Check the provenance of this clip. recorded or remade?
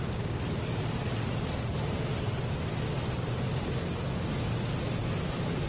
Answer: recorded